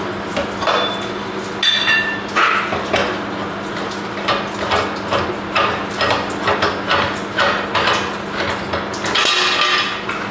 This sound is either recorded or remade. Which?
recorded